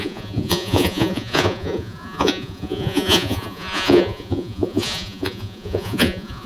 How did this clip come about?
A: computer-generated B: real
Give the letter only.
A